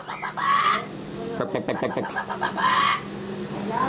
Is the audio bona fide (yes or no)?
yes